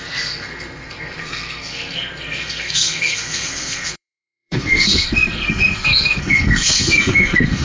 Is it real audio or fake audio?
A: fake